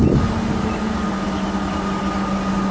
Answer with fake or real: real